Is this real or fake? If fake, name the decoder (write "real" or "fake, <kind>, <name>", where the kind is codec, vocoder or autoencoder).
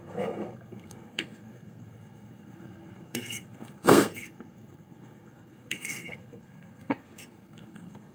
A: fake, codec, SNAC